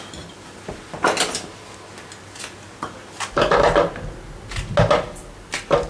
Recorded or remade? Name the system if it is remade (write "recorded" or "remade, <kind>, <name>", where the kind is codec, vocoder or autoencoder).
recorded